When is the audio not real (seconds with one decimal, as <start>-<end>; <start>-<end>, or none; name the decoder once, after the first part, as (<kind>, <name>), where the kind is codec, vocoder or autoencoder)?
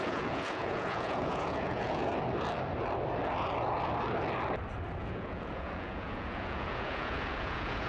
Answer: 0.0-2.1 (vocoder, Vocos); 5.0-7.9